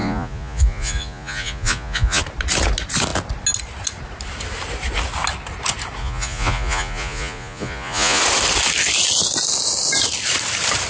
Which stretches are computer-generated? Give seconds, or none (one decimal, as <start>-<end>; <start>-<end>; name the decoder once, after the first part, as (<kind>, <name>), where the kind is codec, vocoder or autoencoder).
0.0-2.2 (vocoder, Vocos); 6.0-8.2